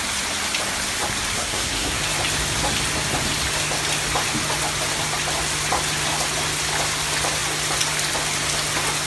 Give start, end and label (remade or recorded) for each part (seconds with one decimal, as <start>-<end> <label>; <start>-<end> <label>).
0.0-1.4 recorded; 1.4-2.0 remade; 2.0-9.1 recorded